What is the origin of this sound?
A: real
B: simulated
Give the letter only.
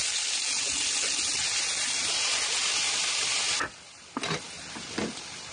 A